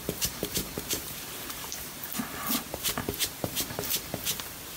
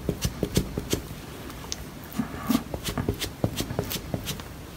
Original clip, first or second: second